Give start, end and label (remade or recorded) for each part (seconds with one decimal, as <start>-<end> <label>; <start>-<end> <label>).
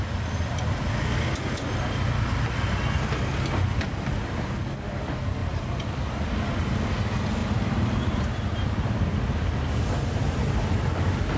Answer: 0.0-5.4 recorded; 5.4-6.2 remade; 6.2-7.4 recorded; 7.4-9.2 remade; 9.2-11.4 recorded